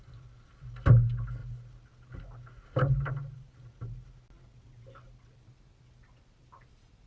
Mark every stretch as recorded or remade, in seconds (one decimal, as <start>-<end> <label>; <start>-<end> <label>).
0.0-7.1 recorded